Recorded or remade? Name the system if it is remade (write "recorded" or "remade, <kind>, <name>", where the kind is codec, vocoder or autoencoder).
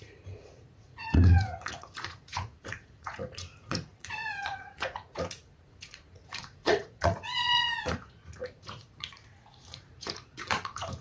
remade, vocoder, Vocos